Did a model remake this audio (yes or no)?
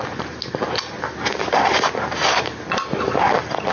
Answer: no